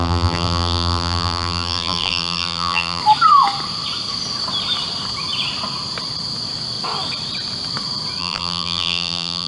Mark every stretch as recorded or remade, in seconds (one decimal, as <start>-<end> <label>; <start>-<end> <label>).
0.0-3.0 remade; 3.0-8.2 recorded; 8.2-9.5 remade